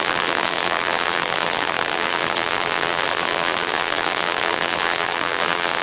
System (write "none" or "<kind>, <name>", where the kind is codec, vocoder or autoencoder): vocoder, BigVGAN v2